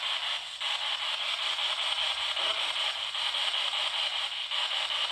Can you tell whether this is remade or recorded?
recorded